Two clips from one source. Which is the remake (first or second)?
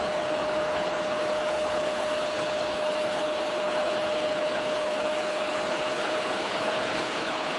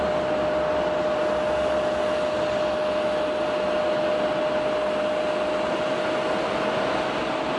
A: first